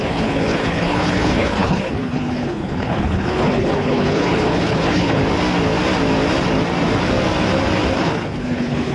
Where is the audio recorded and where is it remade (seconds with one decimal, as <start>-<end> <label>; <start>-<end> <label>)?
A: 0.0-5.2 remade; 5.2-8.0 recorded; 8.0-8.9 remade